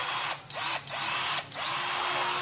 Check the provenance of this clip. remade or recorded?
recorded